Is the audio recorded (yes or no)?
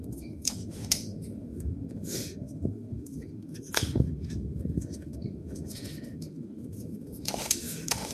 no